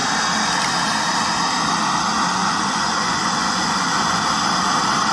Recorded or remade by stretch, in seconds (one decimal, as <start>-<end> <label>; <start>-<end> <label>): 0.0-2.4 recorded; 2.4-4.2 remade; 4.2-5.1 recorded